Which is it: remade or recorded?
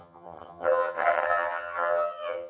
remade